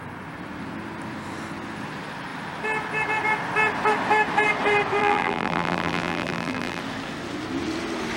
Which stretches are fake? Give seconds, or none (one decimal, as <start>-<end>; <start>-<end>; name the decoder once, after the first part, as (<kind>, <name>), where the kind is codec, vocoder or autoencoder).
5.0-6.8 (vocoder, BigVGAN v2)